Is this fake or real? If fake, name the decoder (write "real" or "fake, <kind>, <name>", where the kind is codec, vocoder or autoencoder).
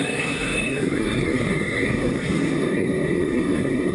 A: fake, codec, SNAC